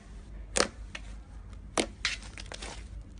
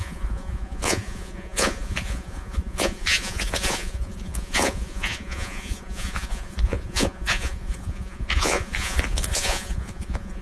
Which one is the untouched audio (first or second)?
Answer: first